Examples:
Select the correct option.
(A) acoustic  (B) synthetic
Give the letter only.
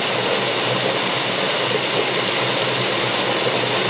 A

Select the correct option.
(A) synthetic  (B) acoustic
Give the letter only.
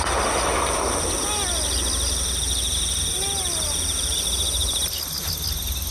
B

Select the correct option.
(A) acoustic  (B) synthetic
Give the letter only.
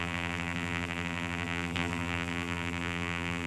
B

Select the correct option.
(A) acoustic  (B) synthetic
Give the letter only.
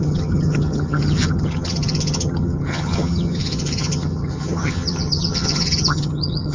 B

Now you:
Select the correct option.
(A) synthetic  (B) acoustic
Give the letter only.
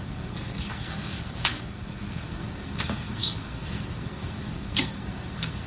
A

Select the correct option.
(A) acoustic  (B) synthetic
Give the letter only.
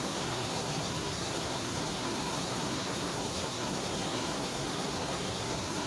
B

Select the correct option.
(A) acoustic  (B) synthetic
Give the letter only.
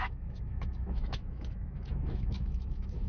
B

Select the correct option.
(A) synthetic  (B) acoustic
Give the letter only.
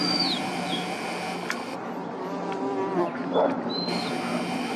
B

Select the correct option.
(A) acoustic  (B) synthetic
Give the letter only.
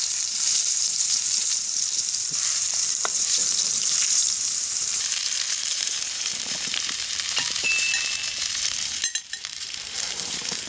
B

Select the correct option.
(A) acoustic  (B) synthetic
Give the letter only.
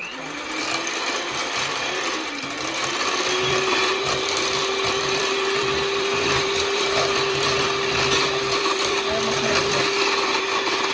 B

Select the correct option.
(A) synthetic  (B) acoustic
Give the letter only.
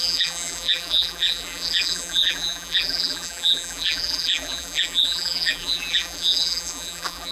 A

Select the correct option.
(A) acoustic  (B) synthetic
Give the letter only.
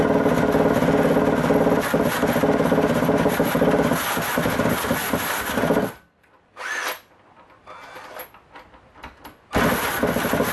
A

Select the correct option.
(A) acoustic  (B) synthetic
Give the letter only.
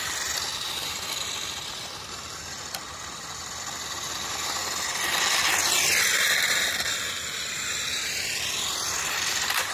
B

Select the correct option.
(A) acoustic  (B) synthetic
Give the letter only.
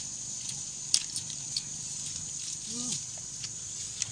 A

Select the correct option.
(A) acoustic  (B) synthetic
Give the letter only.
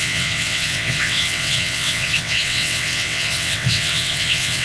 B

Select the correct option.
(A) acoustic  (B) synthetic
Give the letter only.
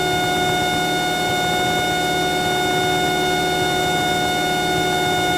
A